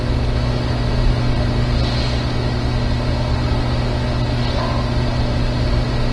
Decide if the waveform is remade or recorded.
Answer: recorded